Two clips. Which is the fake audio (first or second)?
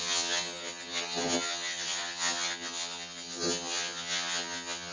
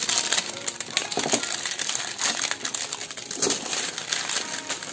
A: first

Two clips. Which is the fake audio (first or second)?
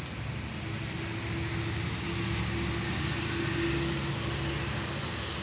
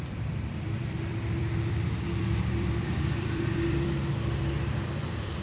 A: second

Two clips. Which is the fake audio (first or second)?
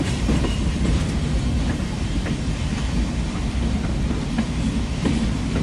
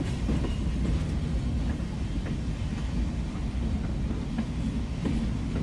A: first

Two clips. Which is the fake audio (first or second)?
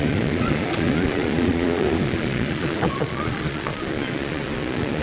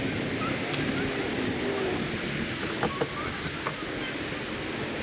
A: first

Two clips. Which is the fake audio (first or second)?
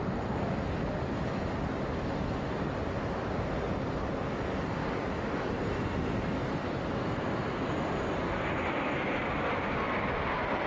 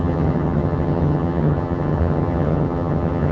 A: second